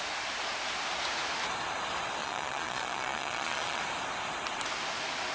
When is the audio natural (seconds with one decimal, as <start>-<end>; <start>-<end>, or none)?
0.0-2.2; 3.8-5.3